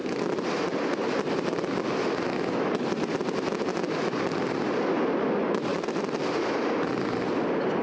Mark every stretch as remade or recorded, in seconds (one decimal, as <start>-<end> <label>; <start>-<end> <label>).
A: 0.0-0.8 remade; 0.8-5.7 recorded; 5.7-6.7 remade; 6.7-7.8 recorded